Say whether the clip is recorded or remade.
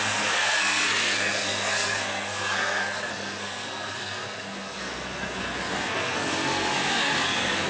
remade